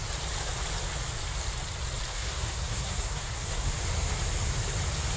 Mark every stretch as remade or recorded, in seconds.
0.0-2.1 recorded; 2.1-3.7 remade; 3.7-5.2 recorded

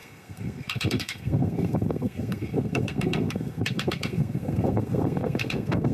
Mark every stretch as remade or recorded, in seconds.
0.0-5.9 remade

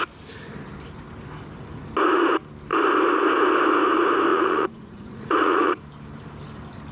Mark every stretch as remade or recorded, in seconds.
0.0-4.3 recorded; 4.3-5.8 remade; 5.8-6.9 recorded

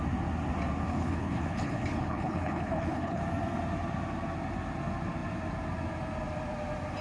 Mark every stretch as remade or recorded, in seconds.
0.0-0.9 recorded; 0.9-3.2 remade; 3.2-7.0 recorded

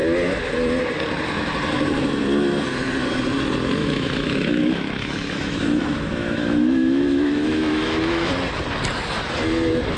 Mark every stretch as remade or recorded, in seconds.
0.0-3.8 recorded; 3.8-8.3 remade; 8.3-10.0 recorded

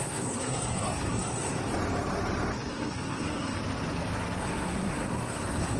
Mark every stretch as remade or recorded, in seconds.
0.0-1.6 remade; 1.6-2.7 recorded; 2.7-3.6 remade; 3.6-4.4 recorded; 4.4-5.8 remade

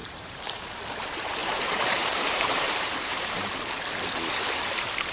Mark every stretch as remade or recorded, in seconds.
0.0-0.7 remade; 0.7-1.4 recorded; 1.4-3.5 remade; 3.5-5.1 recorded